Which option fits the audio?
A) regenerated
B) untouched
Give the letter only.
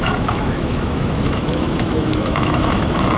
A